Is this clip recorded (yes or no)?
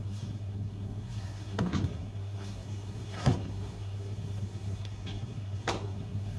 no